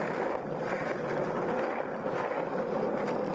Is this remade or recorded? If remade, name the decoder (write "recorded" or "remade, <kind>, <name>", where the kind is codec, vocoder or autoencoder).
recorded